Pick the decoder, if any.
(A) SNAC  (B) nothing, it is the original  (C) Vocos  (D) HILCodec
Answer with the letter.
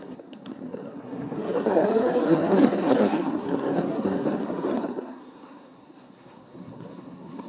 A